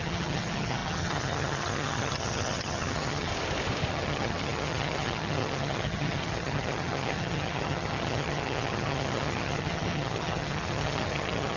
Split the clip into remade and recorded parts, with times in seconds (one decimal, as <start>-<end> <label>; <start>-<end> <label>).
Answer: 0.0-3.3 remade; 3.3-3.9 recorded; 3.9-11.6 remade